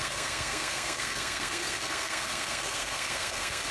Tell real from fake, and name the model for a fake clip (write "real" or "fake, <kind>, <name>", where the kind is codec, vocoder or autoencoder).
fake, codec, SNAC